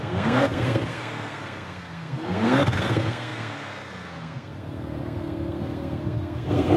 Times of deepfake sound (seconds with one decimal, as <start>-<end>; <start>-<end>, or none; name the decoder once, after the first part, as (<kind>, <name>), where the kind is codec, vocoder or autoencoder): 0.0-6.8 (codec, SNAC)